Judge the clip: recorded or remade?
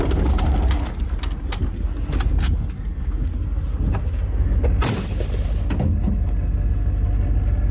recorded